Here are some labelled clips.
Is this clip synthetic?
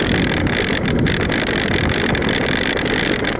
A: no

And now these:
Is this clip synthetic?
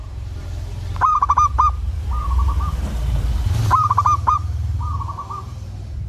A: yes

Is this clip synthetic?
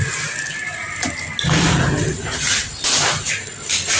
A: no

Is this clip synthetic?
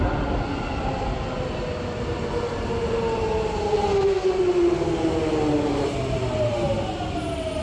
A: no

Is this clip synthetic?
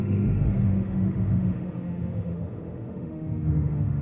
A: yes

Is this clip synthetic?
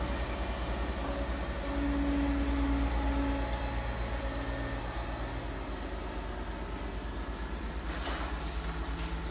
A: no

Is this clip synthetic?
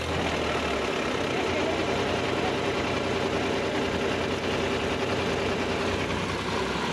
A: no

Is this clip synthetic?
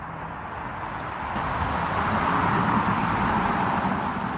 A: no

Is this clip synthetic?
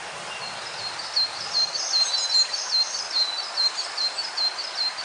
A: no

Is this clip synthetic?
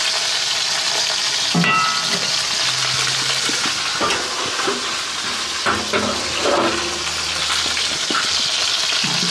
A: no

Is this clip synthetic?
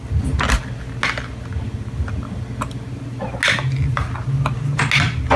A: no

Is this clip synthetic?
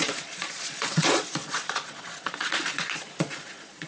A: yes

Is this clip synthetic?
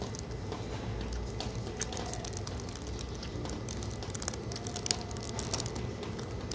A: no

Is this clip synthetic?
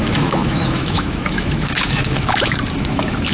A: yes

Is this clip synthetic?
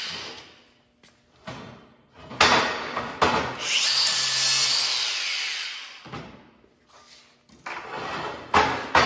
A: no